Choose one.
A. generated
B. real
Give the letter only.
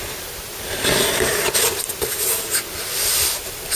B